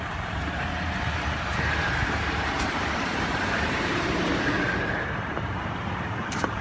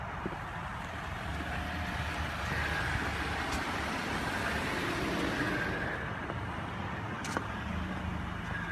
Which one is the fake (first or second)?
first